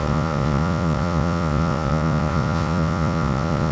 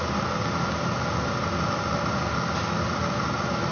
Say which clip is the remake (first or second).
first